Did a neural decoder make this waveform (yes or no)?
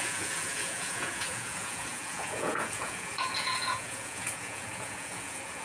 yes